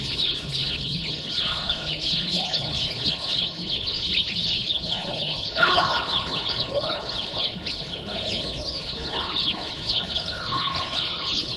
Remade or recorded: remade